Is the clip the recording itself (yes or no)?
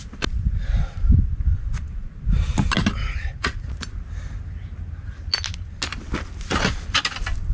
yes